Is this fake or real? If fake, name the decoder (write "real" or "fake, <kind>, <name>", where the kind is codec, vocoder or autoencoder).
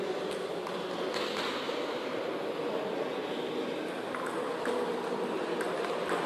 real